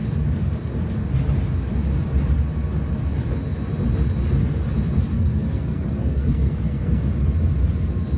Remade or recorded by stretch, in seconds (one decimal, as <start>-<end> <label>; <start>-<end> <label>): 0.0-5.1 recorded; 5.1-7.1 remade; 7.1-8.2 recorded